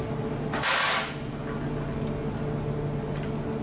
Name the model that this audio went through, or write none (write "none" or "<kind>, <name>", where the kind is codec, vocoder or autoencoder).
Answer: none